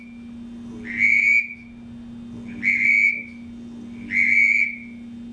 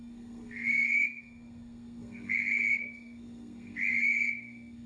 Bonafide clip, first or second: first